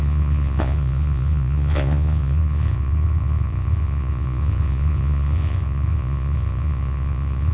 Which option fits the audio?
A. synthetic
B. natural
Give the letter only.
A